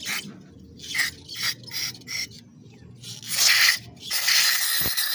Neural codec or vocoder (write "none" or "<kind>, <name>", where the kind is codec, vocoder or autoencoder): none